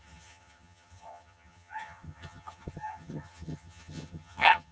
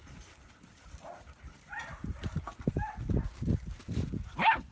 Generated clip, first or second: first